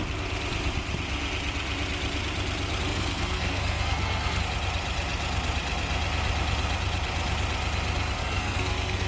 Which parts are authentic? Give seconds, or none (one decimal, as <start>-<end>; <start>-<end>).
0.0-2.9; 4.4-8.2